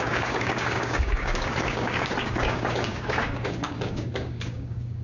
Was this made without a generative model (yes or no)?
no